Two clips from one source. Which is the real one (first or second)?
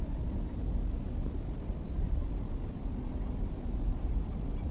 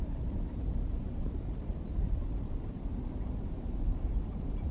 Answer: first